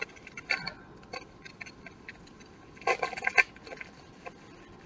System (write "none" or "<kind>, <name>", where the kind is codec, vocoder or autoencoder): none